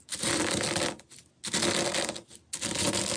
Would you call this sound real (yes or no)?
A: yes